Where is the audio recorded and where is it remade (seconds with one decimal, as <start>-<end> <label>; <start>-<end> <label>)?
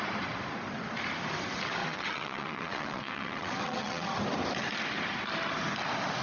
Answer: 0.0-1.8 recorded; 1.8-4.1 remade; 4.1-6.2 recorded